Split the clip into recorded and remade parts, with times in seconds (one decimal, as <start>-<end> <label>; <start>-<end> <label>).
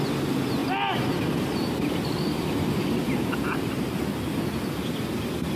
0.0-0.6 recorded; 0.6-4.0 remade; 4.0-5.6 recorded